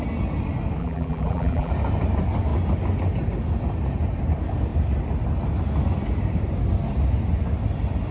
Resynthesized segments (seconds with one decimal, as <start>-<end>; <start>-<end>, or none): 0.8-1.7